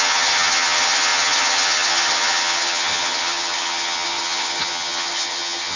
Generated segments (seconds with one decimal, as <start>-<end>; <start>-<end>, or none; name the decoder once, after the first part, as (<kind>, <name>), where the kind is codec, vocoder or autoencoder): 0.0-5.8 (vocoder, HiFi-GAN)